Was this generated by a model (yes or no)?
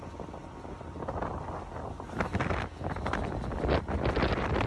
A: no